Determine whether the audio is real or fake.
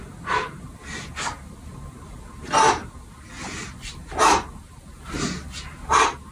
real